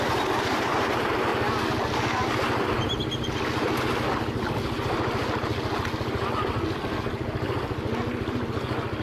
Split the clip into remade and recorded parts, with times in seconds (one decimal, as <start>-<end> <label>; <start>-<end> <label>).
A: 0.0-9.0 recorded